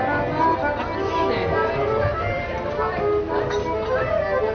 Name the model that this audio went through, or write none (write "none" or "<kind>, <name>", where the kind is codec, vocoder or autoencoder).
none